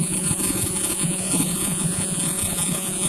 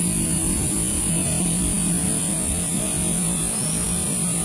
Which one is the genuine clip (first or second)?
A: second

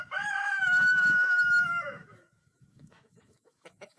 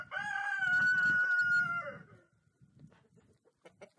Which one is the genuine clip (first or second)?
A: second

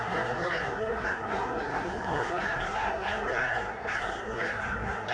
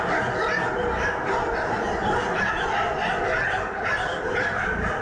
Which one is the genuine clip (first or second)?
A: second